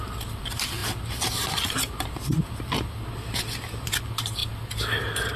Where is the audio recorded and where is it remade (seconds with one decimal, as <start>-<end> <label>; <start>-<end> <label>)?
0.0-5.4 recorded